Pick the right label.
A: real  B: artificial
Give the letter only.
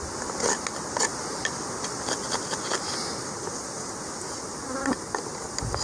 A